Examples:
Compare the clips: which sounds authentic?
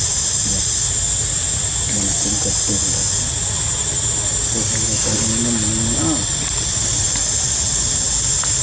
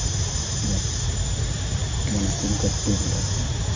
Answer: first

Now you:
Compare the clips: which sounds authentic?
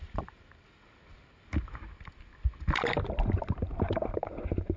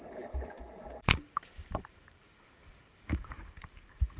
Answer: first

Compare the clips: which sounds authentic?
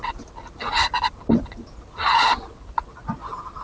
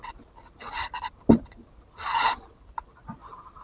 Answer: first